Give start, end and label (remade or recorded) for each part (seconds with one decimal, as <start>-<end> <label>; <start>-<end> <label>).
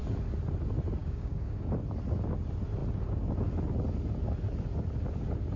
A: 0.0-1.0 recorded; 1.0-1.6 remade; 1.6-5.6 recorded